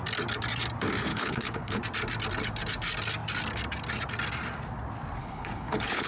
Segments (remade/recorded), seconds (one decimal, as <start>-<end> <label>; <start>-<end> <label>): 0.0-1.1 recorded; 1.1-1.8 remade; 1.8-5.2 recorded; 5.2-6.1 remade